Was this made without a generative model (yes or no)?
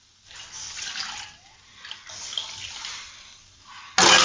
yes